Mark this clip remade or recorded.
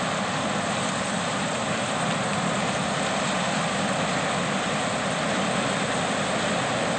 remade